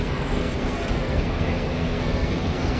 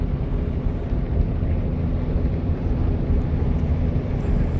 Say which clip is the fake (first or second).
first